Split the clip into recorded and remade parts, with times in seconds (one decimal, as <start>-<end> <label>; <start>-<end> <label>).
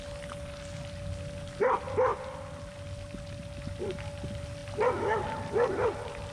0.0-6.3 recorded